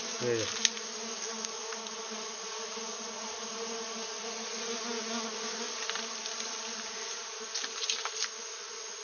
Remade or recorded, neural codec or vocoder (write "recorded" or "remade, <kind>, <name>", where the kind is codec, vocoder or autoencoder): recorded